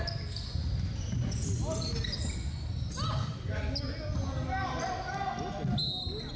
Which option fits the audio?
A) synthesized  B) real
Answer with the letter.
B